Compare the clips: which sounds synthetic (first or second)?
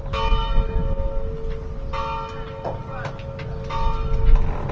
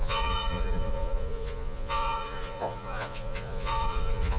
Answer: second